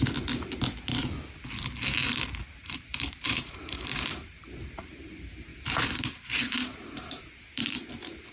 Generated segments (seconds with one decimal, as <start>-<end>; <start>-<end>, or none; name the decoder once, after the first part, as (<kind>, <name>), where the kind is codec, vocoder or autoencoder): 2.0-5.1 (vocoder, BigVGAN v2); 5.5-7.8